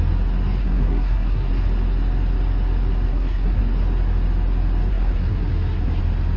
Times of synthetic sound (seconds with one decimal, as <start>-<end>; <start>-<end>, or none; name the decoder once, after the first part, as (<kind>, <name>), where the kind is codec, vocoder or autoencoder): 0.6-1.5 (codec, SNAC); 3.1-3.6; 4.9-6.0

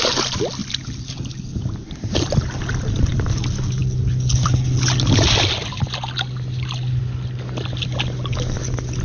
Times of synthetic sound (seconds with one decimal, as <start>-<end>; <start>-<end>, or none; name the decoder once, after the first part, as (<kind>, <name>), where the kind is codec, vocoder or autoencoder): none

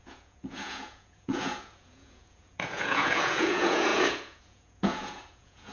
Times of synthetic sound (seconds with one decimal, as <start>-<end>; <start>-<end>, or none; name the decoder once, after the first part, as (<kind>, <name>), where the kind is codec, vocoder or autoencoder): 0.0-5.7 (vocoder, Vocos)